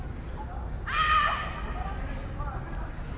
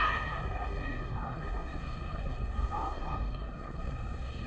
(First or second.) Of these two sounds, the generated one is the second